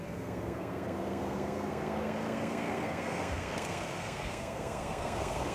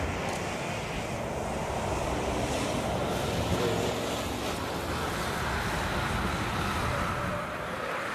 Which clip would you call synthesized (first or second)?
first